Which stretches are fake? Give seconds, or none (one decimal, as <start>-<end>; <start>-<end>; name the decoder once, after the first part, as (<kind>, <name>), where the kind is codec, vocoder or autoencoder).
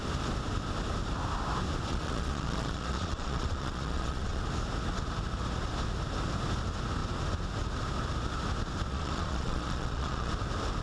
1.9-4.4 (vocoder, Vocos); 8.9-10.3